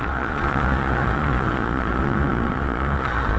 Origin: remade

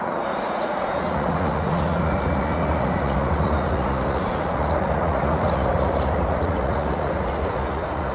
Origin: remade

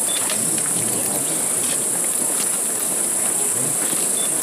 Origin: recorded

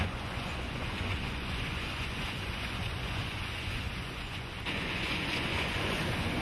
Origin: remade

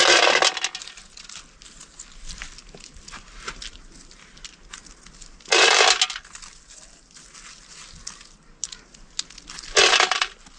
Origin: recorded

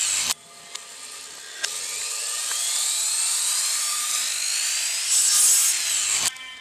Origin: recorded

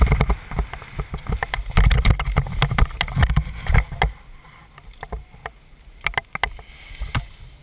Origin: recorded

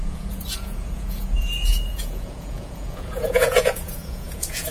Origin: remade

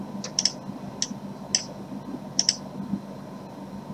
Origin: recorded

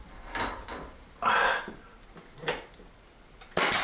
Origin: recorded